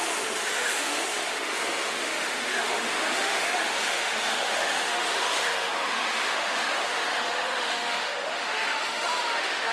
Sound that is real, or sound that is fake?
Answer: fake